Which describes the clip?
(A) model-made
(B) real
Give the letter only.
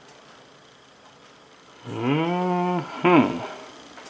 B